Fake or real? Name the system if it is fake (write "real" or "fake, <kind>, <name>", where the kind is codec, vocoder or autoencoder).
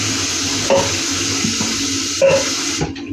real